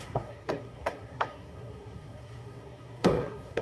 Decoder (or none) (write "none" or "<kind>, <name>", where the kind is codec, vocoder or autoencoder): codec, SNAC